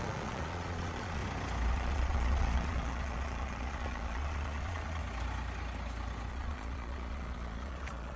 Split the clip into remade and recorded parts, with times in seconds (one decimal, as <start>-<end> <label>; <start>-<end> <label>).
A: 0.0-1.2 remade; 1.2-1.7 recorded; 1.7-5.0 remade; 5.0-6.3 recorded; 6.3-8.2 remade